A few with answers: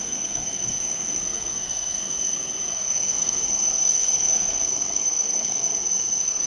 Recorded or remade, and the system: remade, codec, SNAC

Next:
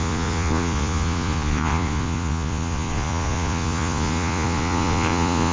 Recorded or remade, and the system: remade, vocoder, Vocos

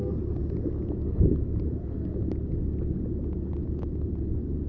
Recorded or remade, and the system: recorded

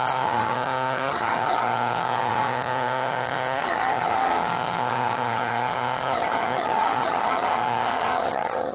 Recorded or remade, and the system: remade, vocoder, HiFi-GAN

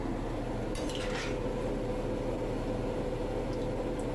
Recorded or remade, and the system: recorded